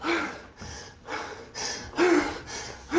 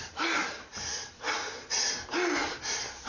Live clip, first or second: first